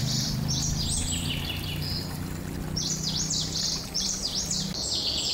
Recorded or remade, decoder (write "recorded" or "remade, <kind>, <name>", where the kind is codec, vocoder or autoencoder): recorded